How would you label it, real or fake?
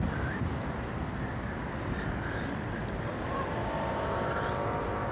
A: real